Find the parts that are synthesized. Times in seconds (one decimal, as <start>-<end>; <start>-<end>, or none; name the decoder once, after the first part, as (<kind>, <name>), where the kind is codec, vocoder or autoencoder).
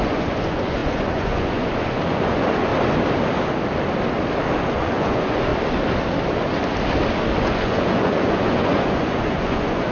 0.0-2.7 (vocoder, Vocos); 4.6-5.5; 7.4-9.9